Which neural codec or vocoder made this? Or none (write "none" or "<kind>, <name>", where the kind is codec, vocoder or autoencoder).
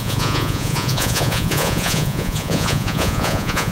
vocoder, Vocos